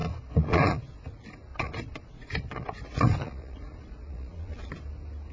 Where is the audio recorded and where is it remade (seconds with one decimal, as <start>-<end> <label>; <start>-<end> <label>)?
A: 0.0-1.1 remade; 1.1-1.5 recorded; 1.5-4.7 remade; 4.7-5.3 recorded